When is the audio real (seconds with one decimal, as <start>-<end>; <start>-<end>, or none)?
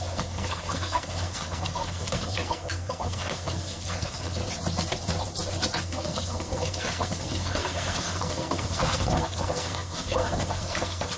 4.4-5.8